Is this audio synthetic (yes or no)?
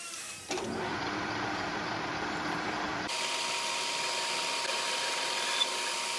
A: yes